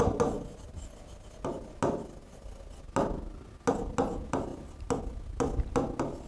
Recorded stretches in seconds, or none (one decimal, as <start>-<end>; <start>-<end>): 0.0-6.3